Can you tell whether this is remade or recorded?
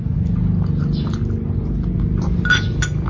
recorded